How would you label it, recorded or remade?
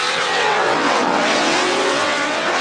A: remade